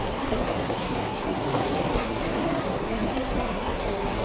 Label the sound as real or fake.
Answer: fake